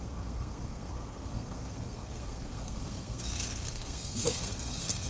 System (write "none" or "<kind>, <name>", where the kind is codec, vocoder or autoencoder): codec, SNAC